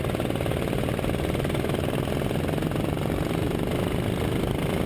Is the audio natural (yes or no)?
yes